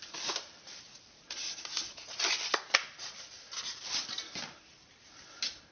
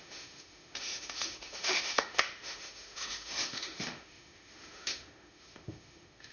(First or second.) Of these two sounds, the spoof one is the second